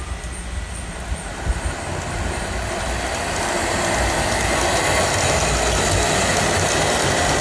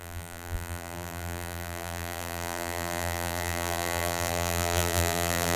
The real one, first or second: first